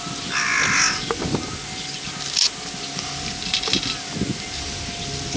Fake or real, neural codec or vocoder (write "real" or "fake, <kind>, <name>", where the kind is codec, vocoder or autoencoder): real